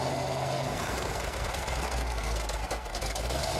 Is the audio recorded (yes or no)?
no